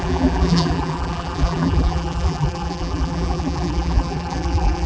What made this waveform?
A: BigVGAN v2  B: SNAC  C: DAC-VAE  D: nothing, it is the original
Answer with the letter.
A